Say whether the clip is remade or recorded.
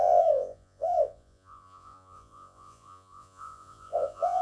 remade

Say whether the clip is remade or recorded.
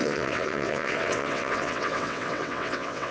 remade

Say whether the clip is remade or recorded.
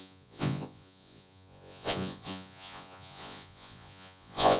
remade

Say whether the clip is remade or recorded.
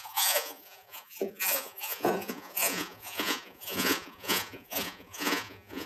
remade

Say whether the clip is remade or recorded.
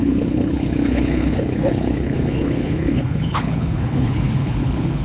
remade